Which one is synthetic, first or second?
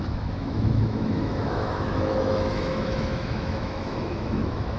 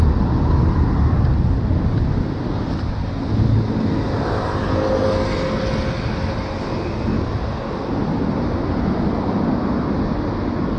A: first